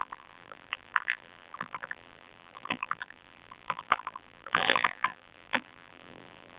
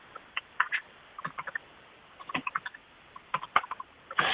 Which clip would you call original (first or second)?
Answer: second